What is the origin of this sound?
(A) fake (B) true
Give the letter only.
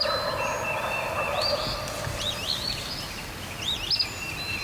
B